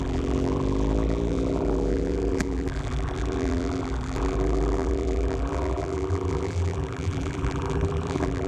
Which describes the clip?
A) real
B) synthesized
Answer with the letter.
B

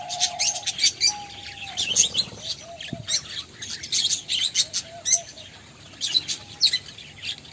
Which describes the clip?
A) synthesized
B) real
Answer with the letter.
B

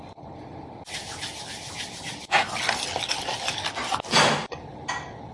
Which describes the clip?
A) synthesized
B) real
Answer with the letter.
B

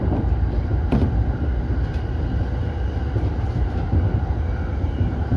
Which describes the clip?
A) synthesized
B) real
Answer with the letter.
B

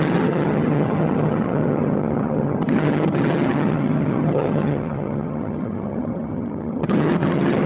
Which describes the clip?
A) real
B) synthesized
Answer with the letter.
B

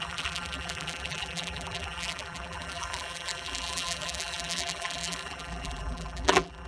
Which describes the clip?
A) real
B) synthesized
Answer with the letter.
B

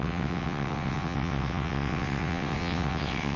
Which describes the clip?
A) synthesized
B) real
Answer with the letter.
A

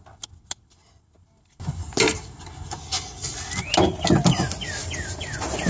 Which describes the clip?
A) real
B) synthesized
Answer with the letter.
A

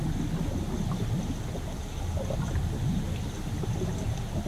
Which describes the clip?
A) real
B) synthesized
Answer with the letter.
A